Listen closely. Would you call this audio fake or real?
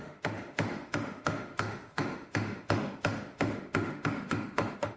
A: fake